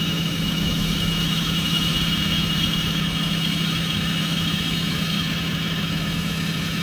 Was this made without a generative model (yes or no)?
no